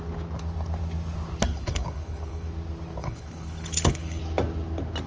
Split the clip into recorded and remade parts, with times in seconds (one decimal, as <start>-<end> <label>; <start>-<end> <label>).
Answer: 0.0-1.5 recorded; 1.5-2.5 remade; 2.5-3.0 recorded; 3.0-4.2 remade; 4.2-5.1 recorded